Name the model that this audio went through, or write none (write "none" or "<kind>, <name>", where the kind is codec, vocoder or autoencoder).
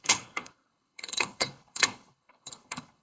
codec, HILCodec